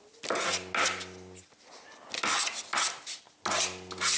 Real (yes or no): yes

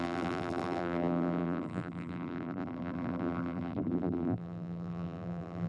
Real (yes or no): no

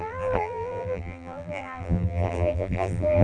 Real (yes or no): no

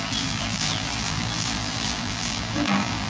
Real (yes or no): no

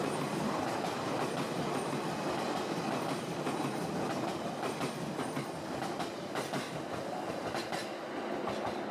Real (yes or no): yes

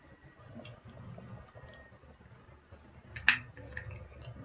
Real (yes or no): yes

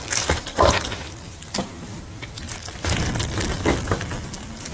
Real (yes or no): no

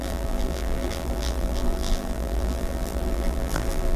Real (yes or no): no